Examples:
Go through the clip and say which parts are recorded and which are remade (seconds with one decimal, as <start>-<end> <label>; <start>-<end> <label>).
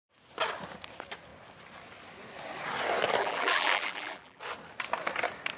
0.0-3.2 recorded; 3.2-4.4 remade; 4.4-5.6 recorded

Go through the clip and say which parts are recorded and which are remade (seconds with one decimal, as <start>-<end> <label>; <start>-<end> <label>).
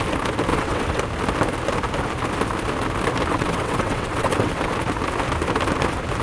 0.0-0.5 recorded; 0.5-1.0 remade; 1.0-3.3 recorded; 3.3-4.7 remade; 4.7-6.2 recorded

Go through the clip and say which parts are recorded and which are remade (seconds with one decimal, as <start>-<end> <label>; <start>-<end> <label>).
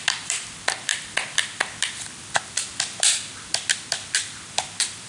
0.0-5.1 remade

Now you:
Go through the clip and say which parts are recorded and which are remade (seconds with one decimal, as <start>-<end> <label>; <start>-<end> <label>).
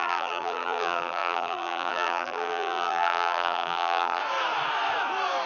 0.0-4.2 remade; 4.2-5.5 recorded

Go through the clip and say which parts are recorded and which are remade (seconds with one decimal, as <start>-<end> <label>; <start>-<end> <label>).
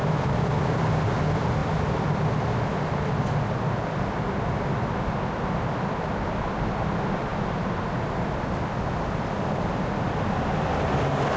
0.0-11.4 recorded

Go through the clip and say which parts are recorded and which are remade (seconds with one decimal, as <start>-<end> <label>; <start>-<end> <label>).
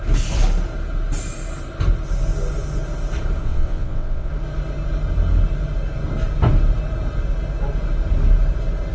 0.0-3.4 recorded; 3.4-4.3 remade; 4.3-8.9 recorded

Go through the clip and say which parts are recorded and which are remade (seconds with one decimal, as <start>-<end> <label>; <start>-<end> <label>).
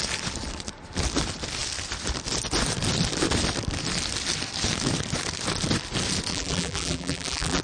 0.0-6.3 recorded; 6.3-7.6 remade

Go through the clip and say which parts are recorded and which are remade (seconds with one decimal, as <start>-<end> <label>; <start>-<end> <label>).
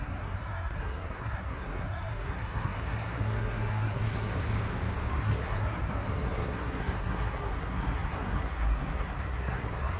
0.0-4.4 remade; 4.4-5.1 recorded; 5.1-10.0 remade